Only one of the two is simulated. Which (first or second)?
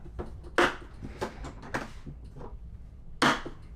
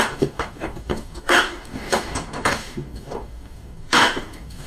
second